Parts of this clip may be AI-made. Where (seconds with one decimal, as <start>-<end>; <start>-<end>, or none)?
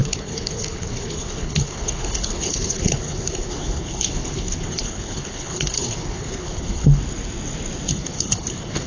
0.0-7.0; 7.9-8.9